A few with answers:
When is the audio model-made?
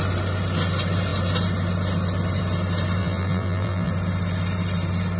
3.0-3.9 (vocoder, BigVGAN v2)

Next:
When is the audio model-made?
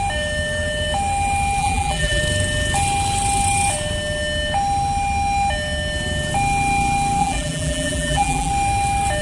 1.6-2.2 (vocoder, BigVGAN v2); 7.2-8.5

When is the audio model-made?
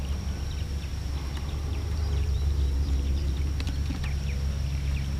0.9-4.0 (vocoder, BigVGAN v2)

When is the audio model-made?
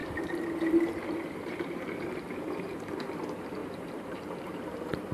0.0-5.1 (vocoder, BigVGAN v2)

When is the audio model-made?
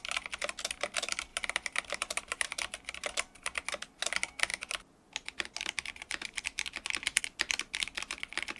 1.3-3.1 (vocoder, BigVGAN v2); 4.5-7.2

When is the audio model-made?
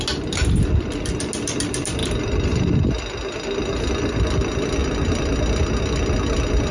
2.0-2.8 (vocoder, BigVGAN v2)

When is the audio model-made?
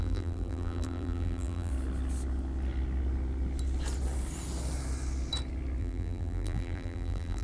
0.0-1.7 (vocoder, BigVGAN v2); 5.8-7.4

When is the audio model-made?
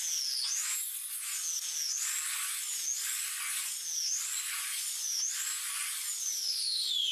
4.0-7.1 (vocoder, BigVGAN v2)